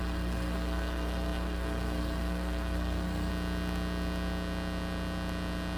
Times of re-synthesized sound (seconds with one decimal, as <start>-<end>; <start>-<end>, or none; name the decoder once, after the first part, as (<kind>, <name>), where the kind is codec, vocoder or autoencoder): 0.0-3.3 (codec, SNAC)

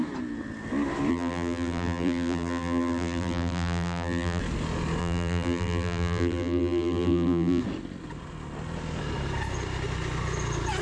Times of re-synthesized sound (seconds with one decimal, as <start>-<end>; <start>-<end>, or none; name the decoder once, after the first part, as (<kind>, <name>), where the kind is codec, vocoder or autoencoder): 1.1-4.4 (vocoder, BigVGAN v2); 5.0-7.6

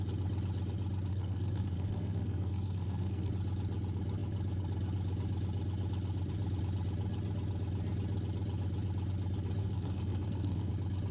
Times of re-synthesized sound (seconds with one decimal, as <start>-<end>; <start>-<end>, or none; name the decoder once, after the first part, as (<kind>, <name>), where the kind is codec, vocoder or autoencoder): 1.1-3.3 (codec, SNAC); 9.6-10.7

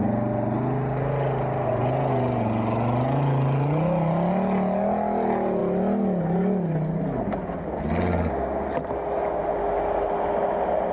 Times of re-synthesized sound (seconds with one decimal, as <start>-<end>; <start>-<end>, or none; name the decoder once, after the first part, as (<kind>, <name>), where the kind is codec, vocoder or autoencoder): none